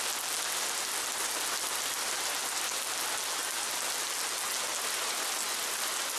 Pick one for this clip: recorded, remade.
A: recorded